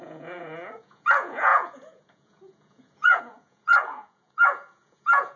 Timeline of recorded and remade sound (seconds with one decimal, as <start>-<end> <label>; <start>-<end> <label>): 0.0-5.4 remade

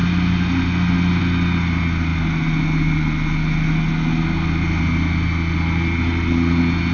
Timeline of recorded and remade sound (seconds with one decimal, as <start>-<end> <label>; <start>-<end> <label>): 0.0-6.9 recorded

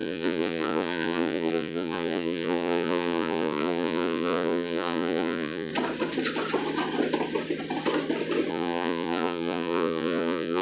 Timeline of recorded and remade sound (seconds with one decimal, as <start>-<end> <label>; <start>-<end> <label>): 0.0-5.7 remade; 5.7-8.5 recorded; 8.5-10.6 remade

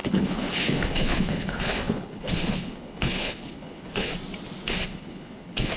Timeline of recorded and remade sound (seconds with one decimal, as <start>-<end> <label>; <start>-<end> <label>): 0.0-4.1 remade; 4.1-4.7 recorded; 4.7-5.8 remade